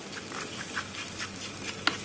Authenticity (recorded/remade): recorded